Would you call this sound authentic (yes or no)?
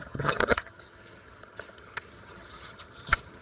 no